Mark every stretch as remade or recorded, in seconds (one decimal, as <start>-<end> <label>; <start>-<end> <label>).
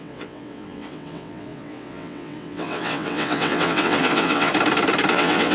0.0-4.5 remade; 4.5-5.1 recorded; 5.1-5.5 remade